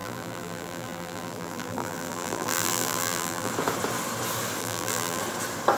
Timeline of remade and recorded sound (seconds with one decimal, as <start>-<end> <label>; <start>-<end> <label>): 0.0-3.5 remade; 3.5-4.6 recorded; 4.6-5.2 remade; 5.2-5.8 recorded